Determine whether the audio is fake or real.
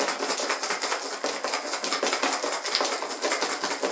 real